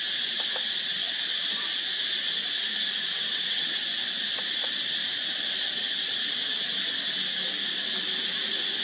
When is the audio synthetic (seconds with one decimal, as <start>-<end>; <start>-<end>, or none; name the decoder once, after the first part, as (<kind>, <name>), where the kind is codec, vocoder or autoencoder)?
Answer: 3.1-3.8 (vocoder, WaveNeXt)